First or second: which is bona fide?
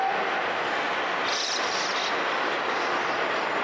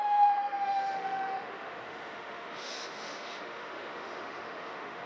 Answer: first